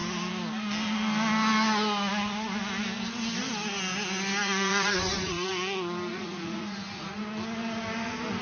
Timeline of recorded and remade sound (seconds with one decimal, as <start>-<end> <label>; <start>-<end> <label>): 0.0-4.4 recorded; 4.4-5.5 remade; 5.5-6.1 recorded; 6.1-7.2 remade; 7.2-8.4 recorded